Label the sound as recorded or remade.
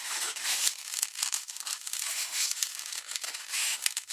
remade